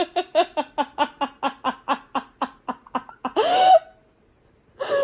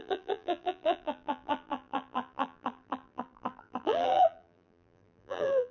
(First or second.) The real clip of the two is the first